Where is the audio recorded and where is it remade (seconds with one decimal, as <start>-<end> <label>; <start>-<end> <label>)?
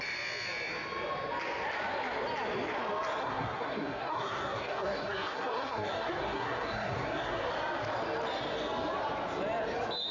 0.0-3.2 recorded; 3.2-7.5 remade; 7.5-10.1 recorded